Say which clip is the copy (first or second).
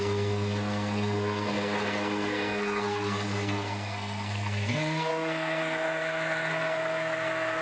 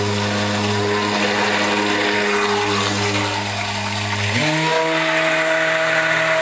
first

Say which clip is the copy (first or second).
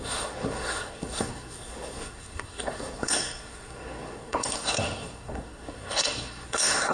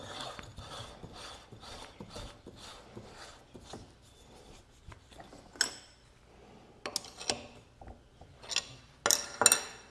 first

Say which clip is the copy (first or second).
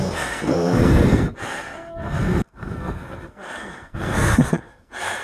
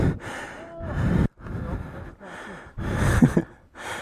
first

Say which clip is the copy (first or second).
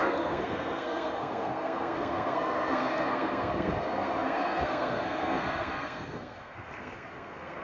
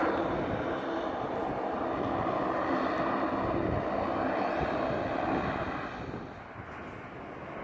first